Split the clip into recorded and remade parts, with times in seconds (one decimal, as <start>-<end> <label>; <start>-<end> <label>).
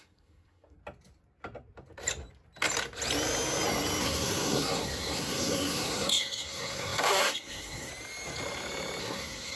0.0-0.8 remade; 0.8-4.0 recorded; 4.0-7.9 remade; 7.9-9.0 recorded; 9.0-9.6 remade